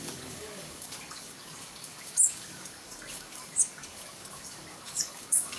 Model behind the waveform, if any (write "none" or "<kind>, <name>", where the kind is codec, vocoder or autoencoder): codec, DAC